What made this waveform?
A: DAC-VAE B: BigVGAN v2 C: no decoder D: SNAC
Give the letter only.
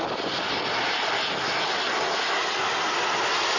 C